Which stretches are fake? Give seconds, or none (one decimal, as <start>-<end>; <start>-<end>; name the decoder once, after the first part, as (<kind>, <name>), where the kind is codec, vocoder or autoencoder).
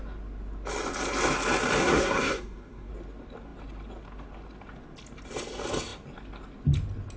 1.8-2.9 (codec, SNAC)